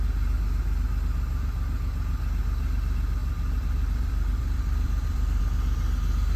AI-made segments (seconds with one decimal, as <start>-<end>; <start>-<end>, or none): 3.2-5.4